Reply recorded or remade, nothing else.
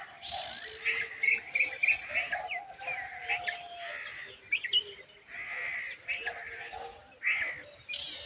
recorded